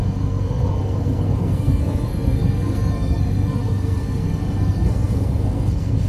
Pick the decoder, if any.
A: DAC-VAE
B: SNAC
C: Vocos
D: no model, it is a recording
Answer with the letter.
B